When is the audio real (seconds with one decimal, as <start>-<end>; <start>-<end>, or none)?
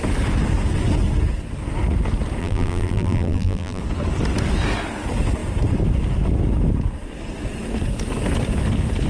0.0-2.4; 3.8-9.1